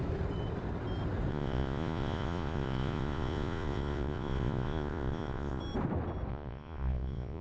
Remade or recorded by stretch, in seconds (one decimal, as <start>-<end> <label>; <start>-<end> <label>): 0.0-1.3 recorded; 1.3-5.6 remade; 5.6-6.3 recorded; 6.3-7.4 remade